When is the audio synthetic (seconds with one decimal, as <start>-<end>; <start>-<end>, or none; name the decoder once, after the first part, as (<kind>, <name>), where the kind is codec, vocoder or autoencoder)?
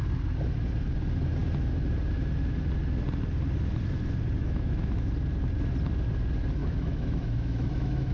4.4-5.1 (autoencoder, DAC-VAE); 6.6-8.1